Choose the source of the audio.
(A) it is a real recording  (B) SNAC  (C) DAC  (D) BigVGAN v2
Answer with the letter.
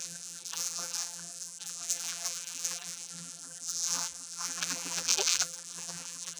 D